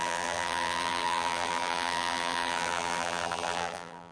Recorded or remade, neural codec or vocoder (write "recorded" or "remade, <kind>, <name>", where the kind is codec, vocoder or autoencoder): remade, vocoder, BigVGAN v2